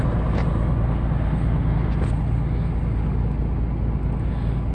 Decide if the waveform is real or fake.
real